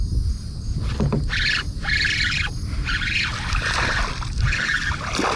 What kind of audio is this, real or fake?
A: real